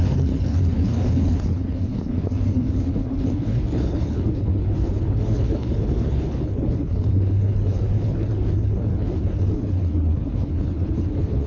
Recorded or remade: remade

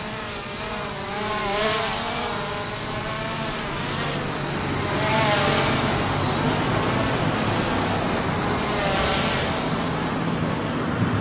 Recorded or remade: recorded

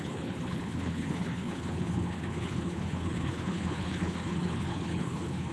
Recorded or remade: remade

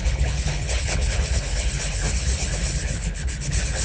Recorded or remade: remade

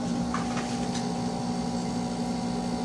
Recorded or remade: recorded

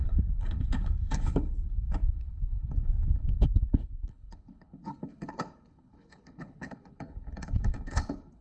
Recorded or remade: remade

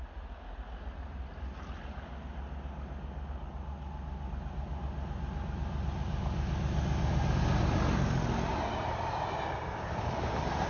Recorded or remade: recorded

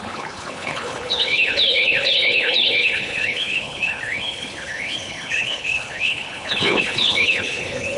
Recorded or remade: remade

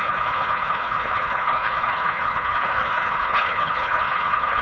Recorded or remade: remade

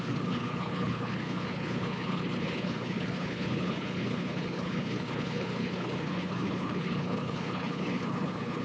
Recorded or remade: remade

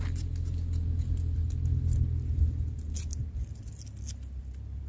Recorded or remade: recorded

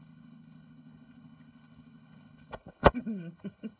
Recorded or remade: remade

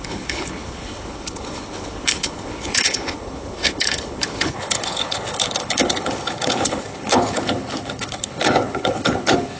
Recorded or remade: remade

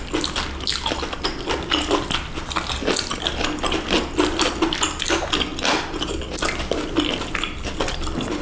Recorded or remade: recorded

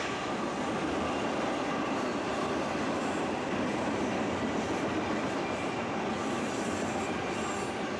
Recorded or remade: recorded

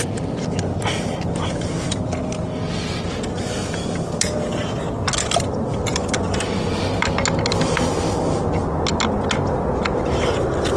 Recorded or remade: recorded